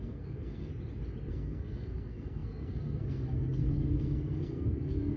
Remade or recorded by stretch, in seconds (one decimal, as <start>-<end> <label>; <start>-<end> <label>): 0.0-0.7 remade; 0.7-1.3 recorded; 1.3-5.2 remade